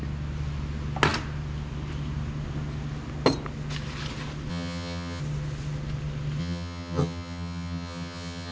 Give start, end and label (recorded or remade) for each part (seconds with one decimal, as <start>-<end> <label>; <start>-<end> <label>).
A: 0.0-4.5 recorded; 4.5-5.2 remade; 5.2-6.4 recorded; 6.4-8.5 remade